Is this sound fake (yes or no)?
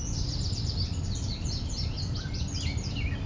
no